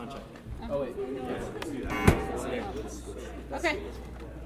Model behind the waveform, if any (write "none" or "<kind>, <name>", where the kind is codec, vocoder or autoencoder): none